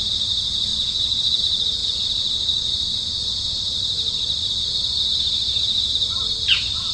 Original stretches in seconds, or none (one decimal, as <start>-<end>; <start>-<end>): 0.0-6.9